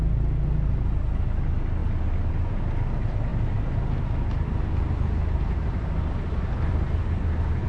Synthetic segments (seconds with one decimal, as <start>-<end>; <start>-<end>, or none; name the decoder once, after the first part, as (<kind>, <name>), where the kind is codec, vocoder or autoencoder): none